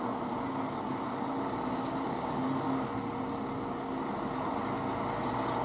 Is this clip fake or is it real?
real